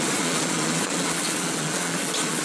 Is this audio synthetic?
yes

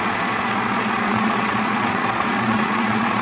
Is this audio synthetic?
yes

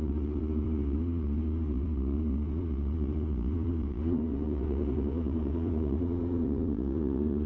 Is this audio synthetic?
yes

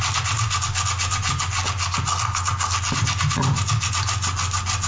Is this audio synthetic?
no